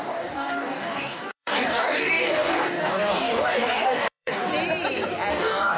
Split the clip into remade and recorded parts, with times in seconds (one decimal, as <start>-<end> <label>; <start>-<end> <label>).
0.0-4.5 remade; 4.5-5.3 recorded; 5.3-5.8 remade